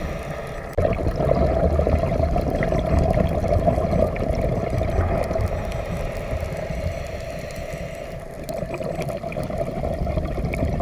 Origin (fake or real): real